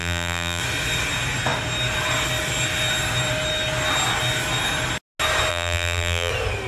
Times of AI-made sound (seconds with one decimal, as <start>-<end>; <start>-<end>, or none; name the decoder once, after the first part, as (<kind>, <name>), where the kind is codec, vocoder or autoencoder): 0.0-0.6 (vocoder, BigVGAN v2); 5.5-6.3